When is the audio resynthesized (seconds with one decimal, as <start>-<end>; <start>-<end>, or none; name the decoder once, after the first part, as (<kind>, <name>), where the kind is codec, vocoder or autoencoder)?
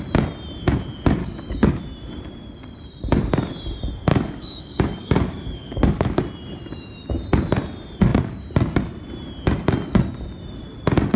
1.2-1.8 (codec, DAC); 4.1-6.2